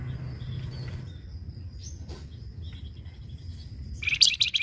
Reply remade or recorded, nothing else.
recorded